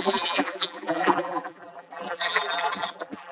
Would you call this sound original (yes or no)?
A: no